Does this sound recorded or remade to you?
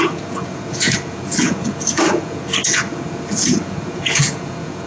remade